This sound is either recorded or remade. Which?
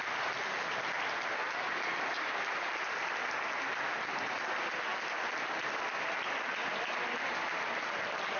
recorded